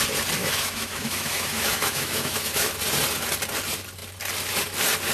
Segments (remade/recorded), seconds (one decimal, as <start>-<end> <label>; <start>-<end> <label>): 0.0-0.4 recorded; 0.4-2.7 remade; 2.7-5.1 recorded